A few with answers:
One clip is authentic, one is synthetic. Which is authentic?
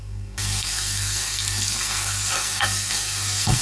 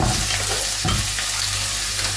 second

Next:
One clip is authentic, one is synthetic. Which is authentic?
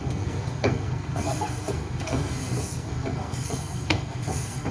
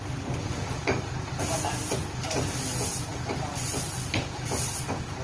second